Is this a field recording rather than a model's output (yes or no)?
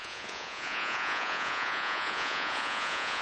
no